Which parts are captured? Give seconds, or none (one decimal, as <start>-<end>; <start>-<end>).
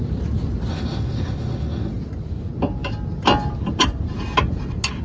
0.0-0.7; 1.9-5.0